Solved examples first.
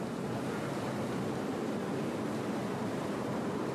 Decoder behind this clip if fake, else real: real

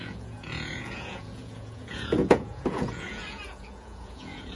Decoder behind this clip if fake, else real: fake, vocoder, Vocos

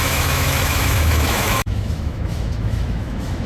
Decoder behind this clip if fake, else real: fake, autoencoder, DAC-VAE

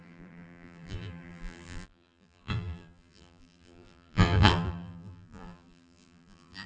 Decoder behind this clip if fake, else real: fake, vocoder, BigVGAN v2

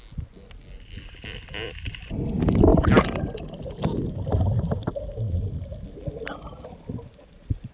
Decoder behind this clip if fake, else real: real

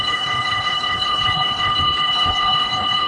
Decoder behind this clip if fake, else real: fake, codec, HILCodec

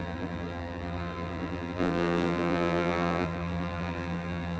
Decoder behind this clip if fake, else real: fake, vocoder, BigVGAN v2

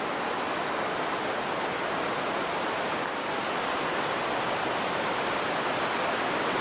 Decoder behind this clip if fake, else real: real